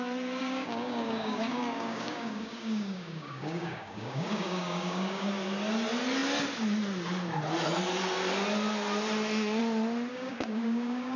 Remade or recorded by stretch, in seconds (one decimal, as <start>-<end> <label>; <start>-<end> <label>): 0.0-0.4 recorded; 0.4-5.3 remade; 5.3-10.1 recorded; 10.1-11.2 remade